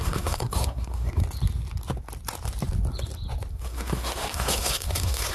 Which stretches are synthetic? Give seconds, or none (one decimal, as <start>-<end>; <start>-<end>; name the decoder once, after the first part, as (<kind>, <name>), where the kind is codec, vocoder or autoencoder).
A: 0.0-1.2 (codec, SNAC); 3.5-5.3